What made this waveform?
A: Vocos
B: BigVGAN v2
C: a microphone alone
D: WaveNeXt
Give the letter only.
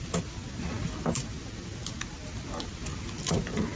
C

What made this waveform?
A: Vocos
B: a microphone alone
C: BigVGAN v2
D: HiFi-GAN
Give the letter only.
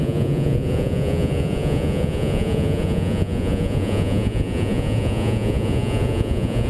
A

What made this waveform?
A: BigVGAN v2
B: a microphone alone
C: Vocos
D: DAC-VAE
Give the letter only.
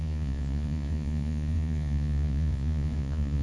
C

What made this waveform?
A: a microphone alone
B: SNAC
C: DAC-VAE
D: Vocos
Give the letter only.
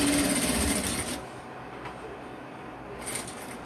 A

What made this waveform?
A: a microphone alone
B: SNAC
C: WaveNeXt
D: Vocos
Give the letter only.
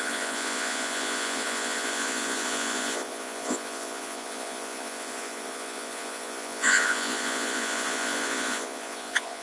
D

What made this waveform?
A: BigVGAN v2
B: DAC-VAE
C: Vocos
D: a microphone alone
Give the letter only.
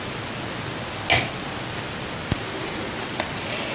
D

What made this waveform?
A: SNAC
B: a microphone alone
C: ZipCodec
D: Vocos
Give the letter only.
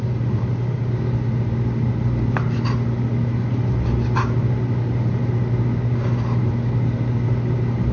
B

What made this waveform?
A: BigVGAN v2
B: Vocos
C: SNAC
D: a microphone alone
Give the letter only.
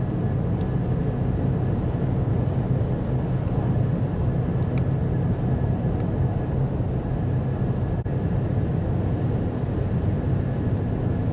D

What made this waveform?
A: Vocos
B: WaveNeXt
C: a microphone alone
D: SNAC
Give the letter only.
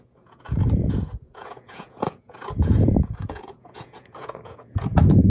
A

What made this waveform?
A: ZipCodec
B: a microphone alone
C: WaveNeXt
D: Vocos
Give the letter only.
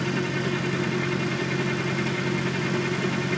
B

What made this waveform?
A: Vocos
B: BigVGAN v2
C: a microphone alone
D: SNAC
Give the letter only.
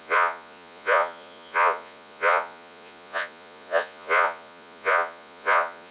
A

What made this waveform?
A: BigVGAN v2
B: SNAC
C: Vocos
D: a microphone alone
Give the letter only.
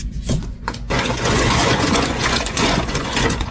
C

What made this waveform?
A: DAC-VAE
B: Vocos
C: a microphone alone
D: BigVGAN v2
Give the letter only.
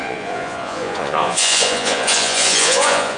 B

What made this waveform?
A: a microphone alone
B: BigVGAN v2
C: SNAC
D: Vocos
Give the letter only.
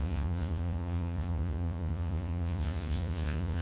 D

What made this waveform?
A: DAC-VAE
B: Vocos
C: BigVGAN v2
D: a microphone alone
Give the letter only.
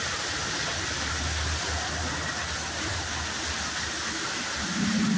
D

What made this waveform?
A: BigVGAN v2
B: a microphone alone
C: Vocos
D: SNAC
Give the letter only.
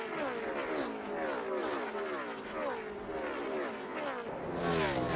B